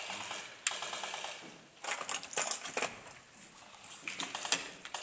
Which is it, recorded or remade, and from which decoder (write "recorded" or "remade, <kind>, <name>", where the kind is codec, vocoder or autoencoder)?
recorded